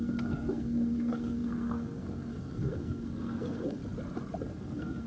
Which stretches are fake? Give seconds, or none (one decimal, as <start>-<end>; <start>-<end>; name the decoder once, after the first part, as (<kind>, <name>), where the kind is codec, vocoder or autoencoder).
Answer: 0.0-3.8 (codec, SNAC); 4.5-5.1

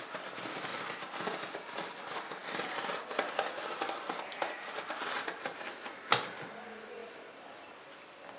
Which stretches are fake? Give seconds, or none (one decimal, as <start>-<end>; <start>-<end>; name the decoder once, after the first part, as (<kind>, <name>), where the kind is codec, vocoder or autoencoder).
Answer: none

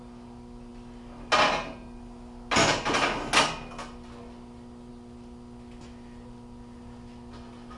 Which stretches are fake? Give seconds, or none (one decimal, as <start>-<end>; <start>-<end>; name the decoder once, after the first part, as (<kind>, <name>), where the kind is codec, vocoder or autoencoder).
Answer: none